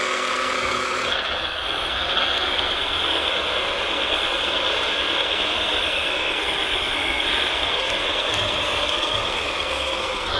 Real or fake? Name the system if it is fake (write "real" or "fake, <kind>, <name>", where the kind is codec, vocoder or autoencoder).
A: fake, codec, SNAC